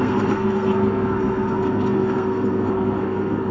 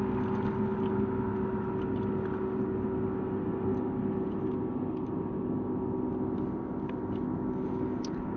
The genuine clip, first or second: second